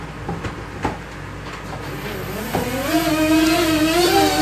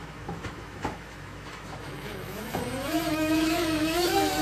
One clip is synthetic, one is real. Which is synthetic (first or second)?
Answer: second